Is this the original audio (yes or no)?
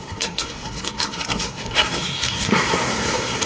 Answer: no